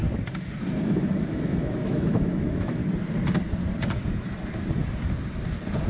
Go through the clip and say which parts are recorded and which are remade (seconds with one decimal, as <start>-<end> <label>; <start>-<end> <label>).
0.0-0.8 recorded; 0.8-2.8 remade; 2.8-5.9 recorded